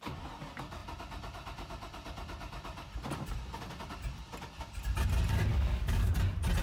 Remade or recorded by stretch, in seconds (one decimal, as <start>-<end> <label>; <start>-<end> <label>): 0.0-5.5 recorded; 5.5-6.1 remade; 6.1-6.6 recorded

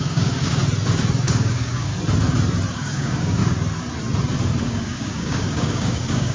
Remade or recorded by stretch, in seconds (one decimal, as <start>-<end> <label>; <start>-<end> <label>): 0.0-0.6 remade; 0.6-1.2 recorded; 1.2-1.9 remade; 1.9-2.7 recorded; 2.7-3.4 remade; 3.4-4.6 recorded; 4.6-6.3 remade

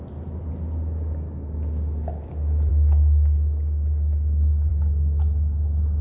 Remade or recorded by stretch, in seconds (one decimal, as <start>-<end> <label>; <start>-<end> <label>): 0.0-2.7 recorded; 2.7-4.7 remade; 4.7-6.0 recorded

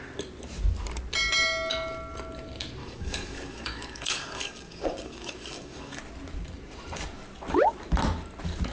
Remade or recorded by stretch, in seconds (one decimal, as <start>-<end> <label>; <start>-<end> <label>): 0.0-2.8 recorded; 2.8-6.0 remade; 6.0-8.7 recorded

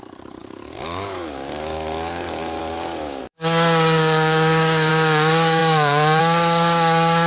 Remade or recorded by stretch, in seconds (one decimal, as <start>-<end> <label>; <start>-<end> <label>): 0.0-7.3 remade

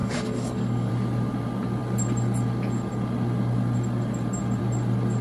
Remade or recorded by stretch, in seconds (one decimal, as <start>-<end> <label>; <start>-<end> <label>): 0.0-0.9 remade; 0.9-5.2 recorded